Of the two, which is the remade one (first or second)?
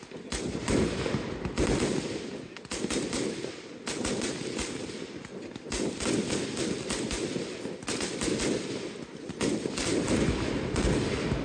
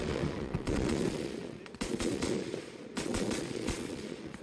second